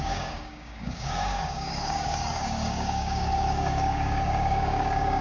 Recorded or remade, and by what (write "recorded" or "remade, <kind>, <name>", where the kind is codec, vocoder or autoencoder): remade, codec, DAC